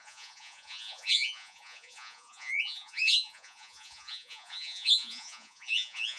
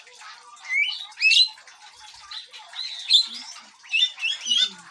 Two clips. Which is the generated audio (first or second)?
first